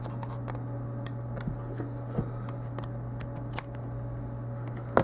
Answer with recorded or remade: recorded